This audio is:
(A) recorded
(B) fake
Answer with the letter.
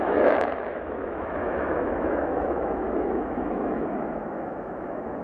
B